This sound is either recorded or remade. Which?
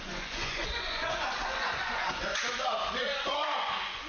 remade